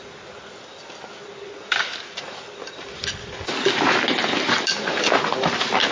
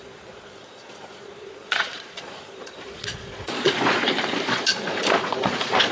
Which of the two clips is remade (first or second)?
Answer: second